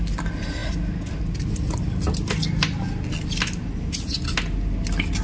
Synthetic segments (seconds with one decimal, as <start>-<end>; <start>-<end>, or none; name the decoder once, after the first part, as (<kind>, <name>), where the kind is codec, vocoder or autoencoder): none